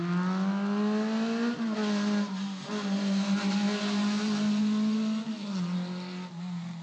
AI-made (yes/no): no